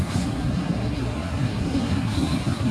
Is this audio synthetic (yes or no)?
yes